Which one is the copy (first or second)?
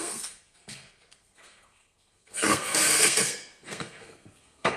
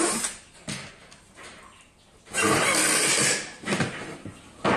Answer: first